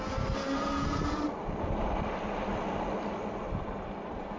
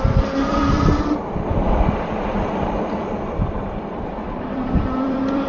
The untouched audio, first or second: first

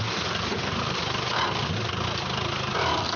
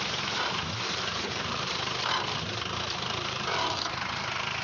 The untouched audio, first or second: first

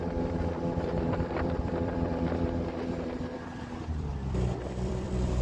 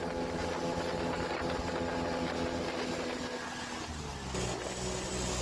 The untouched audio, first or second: second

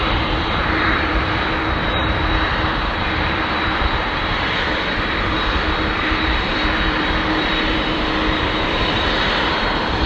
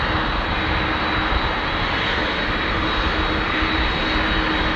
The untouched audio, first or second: second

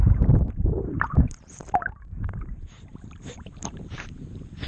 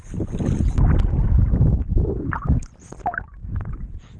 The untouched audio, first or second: second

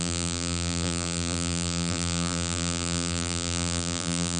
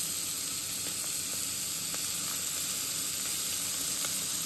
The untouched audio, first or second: second